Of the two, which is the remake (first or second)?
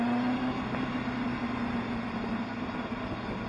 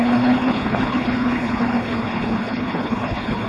second